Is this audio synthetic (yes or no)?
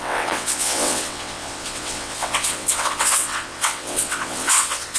yes